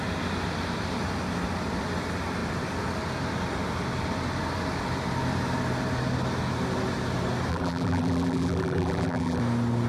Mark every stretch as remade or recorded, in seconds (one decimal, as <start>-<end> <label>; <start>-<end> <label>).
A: 0.0-7.5 recorded; 7.5-9.4 remade; 9.4-9.9 recorded